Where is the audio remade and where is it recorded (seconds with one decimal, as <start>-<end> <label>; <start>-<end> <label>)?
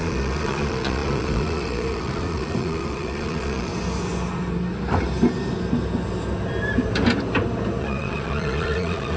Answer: 0.0-3.7 remade; 3.7-7.8 recorded; 7.8-9.2 remade